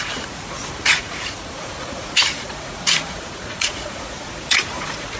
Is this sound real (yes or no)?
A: no